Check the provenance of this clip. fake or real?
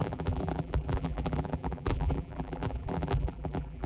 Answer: fake